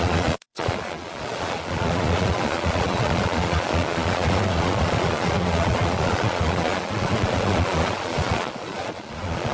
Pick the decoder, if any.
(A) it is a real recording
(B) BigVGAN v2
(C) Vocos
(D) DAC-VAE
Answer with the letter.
C